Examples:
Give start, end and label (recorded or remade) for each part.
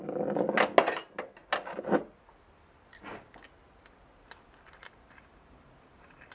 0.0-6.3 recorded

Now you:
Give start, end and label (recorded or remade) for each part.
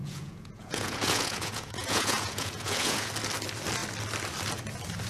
0.0-3.1 remade; 3.1-5.1 recorded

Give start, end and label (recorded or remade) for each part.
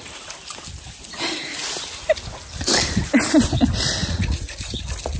0.0-4.0 recorded; 4.0-4.8 remade; 4.8-5.2 recorded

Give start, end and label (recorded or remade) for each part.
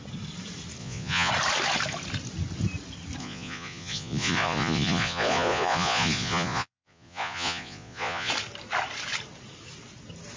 0.0-0.8 recorded; 0.8-1.3 remade; 1.3-3.2 recorded; 3.2-8.3 remade; 8.3-10.4 recorded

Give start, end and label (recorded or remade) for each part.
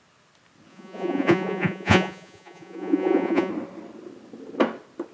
0.0-0.7 recorded; 0.7-3.5 remade; 3.5-5.1 recorded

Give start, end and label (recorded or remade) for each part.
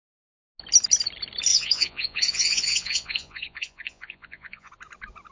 0.0-1.5 recorded; 1.5-4.7 remade; 4.7-5.3 recorded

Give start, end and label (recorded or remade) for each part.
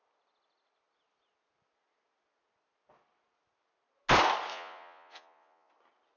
0.0-4.5 recorded; 4.5-5.7 remade; 5.7-6.2 recorded